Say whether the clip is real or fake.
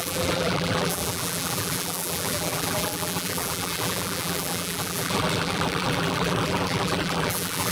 fake